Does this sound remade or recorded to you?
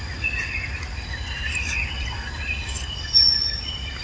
recorded